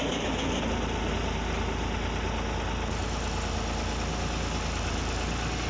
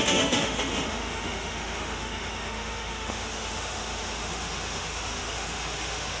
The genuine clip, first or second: first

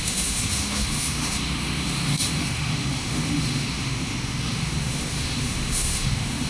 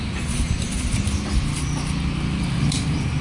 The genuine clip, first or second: second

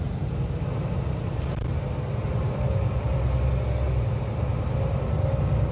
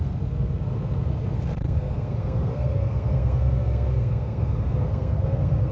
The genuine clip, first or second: first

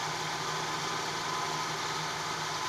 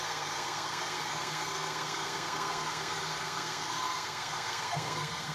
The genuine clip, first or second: first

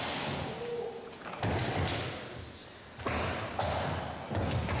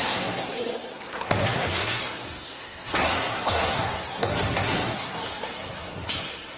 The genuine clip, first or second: first